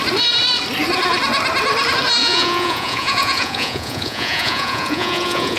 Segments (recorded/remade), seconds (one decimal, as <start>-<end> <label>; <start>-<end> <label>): 0.0-2.2 recorded; 2.2-5.6 remade